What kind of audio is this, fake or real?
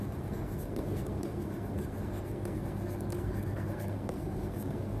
fake